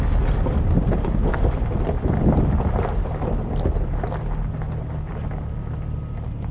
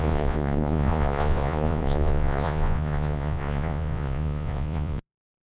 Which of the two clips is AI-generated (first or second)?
second